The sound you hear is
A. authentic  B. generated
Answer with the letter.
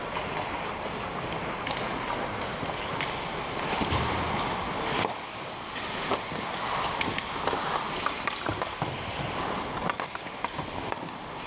A